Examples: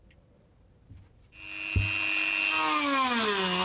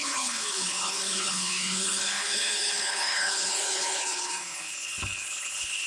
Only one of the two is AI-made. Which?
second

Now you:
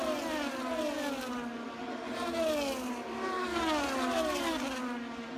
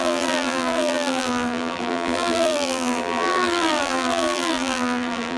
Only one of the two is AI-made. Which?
second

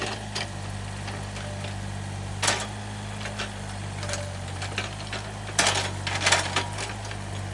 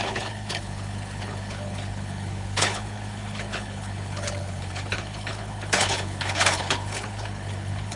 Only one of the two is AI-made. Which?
second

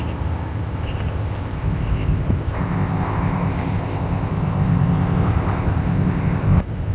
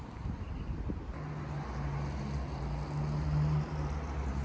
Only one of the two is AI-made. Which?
first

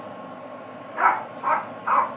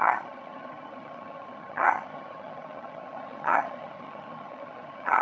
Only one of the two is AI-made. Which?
second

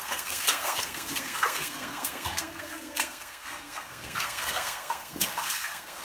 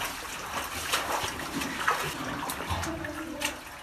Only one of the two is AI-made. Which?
first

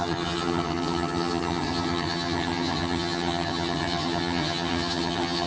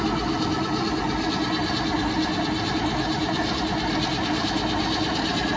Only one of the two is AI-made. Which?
first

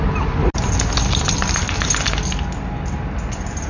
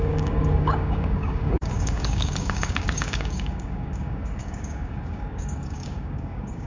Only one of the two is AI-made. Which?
second